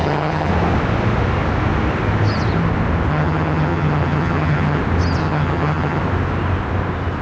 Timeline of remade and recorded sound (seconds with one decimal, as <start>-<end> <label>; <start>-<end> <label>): 0.0-0.5 remade; 0.5-3.1 recorded; 3.1-4.8 remade; 4.8-5.2 recorded; 5.2-6.0 remade; 6.0-7.2 recorded